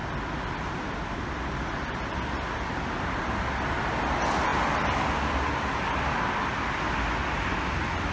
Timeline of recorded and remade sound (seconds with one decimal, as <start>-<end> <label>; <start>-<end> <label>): 0.0-8.1 recorded

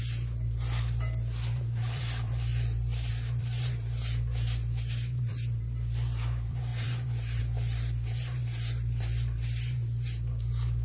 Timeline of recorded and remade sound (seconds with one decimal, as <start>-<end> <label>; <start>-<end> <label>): 0.0-10.8 remade

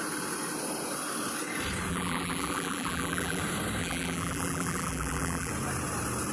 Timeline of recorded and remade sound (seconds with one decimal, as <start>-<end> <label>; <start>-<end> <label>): 0.0-1.9 recorded; 1.9-3.4 remade; 3.4-3.8 recorded; 3.8-5.5 remade; 5.5-6.3 recorded

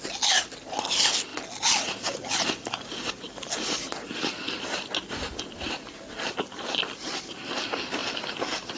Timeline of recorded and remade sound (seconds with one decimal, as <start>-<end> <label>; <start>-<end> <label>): 0.0-8.8 recorded